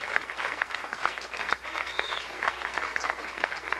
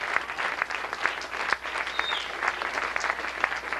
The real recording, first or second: second